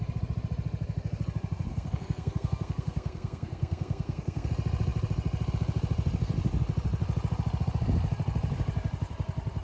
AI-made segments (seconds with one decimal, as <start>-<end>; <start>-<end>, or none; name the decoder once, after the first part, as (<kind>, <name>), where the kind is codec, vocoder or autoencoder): 1.7-4.5 (codec, SNAC)